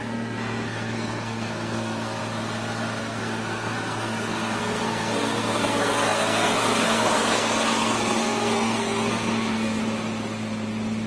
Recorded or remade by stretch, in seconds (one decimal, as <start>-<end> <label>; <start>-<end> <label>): 0.0-2.2 remade; 2.2-3.0 recorded; 3.0-9.8 remade; 9.8-11.1 recorded